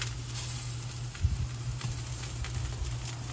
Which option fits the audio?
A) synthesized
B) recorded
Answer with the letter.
B